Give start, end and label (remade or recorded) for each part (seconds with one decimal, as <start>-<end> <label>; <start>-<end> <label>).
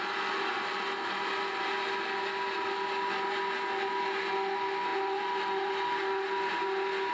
0.0-7.1 recorded